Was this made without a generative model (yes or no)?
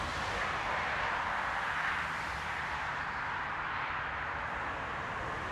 yes